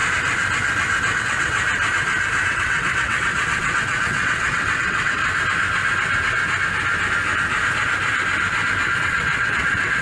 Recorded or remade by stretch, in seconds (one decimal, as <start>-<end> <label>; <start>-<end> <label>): 0.0-1.2 recorded; 1.2-1.6 remade; 1.6-2.5 recorded; 2.5-5.2 remade; 5.2-9.0 recorded; 9.0-10.0 remade